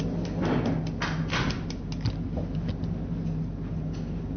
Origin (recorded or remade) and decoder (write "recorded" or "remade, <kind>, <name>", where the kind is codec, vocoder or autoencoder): recorded